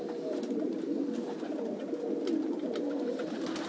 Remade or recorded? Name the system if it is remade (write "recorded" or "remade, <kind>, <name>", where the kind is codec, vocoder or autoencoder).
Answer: recorded